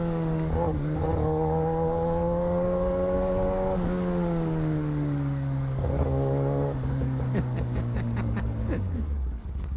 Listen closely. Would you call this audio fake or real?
fake